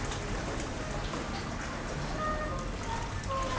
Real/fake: real